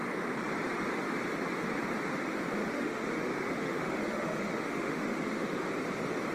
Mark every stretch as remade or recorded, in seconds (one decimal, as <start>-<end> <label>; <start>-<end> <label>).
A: 0.0-2.6 recorded; 2.6-5.7 remade; 5.7-6.3 recorded